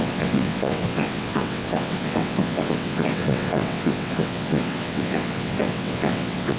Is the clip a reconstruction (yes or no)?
yes